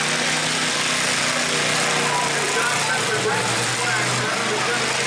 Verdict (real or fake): real